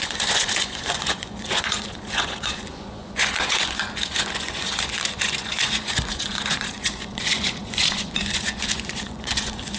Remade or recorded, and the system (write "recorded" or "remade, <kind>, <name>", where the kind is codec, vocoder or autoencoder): remade, vocoder, Vocos